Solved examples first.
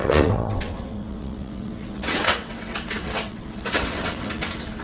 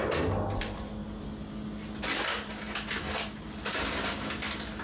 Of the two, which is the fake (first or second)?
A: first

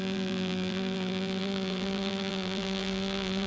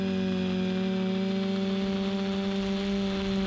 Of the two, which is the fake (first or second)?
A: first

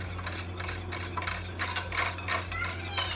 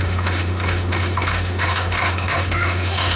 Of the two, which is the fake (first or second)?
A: second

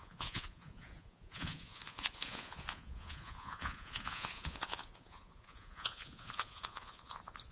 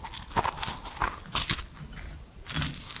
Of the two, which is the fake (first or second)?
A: first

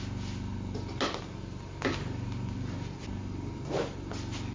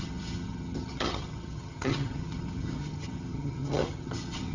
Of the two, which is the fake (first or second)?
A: second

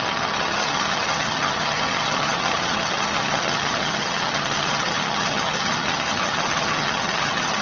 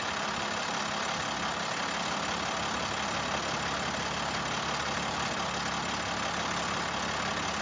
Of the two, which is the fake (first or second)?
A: first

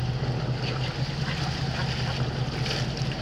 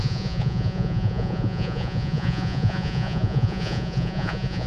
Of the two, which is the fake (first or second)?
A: second